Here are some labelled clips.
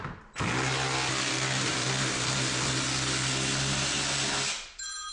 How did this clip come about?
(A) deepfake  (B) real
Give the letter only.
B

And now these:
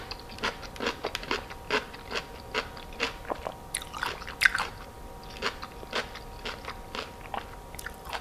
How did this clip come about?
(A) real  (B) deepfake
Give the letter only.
A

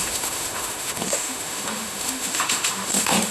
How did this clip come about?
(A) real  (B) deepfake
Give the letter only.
B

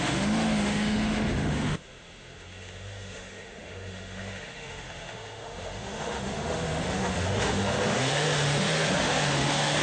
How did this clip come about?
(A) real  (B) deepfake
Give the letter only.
B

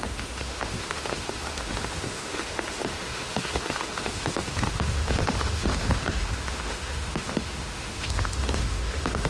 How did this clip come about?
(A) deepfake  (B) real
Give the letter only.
A